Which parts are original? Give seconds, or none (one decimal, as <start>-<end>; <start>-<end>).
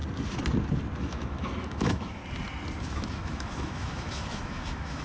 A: 0.0-1.0; 2.2-2.9